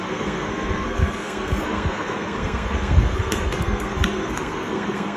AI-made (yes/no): yes